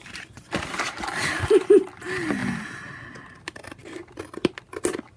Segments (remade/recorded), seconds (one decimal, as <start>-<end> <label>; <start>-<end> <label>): 0.0-5.2 recorded